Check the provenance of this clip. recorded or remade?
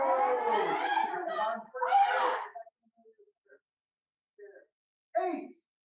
recorded